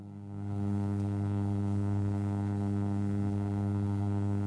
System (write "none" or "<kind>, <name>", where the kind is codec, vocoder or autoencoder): codec, SNAC